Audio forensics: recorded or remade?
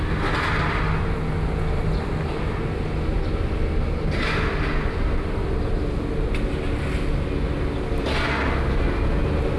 recorded